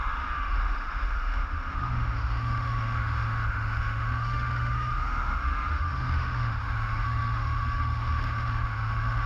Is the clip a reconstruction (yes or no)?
yes